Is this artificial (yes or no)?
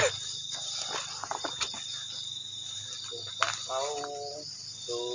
no